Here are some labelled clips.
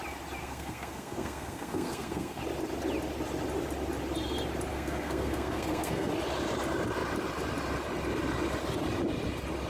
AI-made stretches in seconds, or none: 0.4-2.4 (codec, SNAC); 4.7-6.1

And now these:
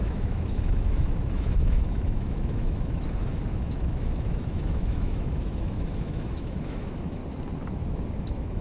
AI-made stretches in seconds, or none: 0.0-7.2 (autoencoder, DAC-VAE); 8.2-8.6

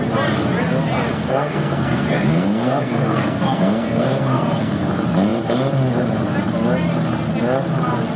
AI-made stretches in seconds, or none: 1.1-4.8 (codec, SNAC)

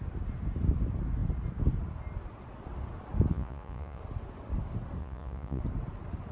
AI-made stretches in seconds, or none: 3.3-4.0 (vocoder, Vocos); 5.0-5.6

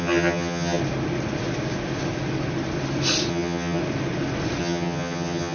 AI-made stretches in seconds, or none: 0.0-0.8 (vocoder, HiFi-GAN); 3.3-3.8; 4.6-5.5

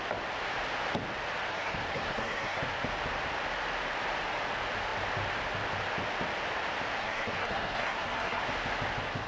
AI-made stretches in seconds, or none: 1.5-2.6 (codec, SNAC); 7.0-8.4

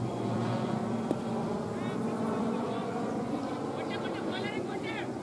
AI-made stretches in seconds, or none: 0.0-0.8 (vocoder, Vocos); 2.4-3.4; 4.3-5.2